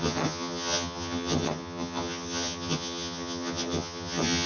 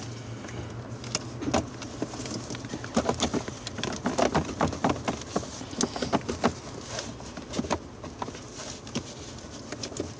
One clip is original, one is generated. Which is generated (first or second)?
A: first